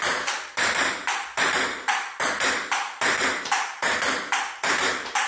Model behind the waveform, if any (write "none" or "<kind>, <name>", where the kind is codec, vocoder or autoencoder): none